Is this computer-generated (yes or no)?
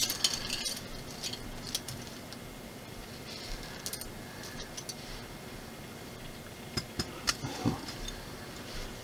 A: no